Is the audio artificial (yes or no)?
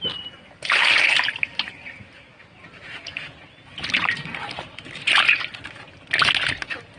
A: no